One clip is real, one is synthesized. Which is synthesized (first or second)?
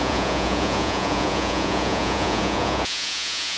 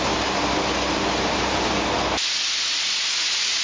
first